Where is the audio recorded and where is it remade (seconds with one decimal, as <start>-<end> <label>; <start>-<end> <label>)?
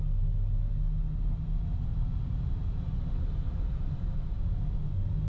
0.0-1.9 recorded; 1.9-5.3 remade